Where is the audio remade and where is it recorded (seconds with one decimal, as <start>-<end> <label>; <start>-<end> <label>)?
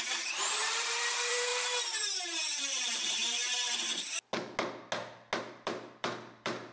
0.0-3.4 remade; 3.4-5.4 recorded; 5.4-6.7 remade